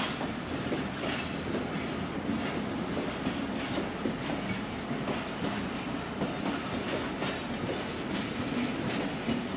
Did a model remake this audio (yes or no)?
no